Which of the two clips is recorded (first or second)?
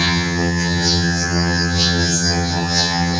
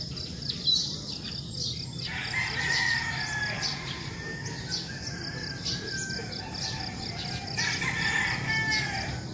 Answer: second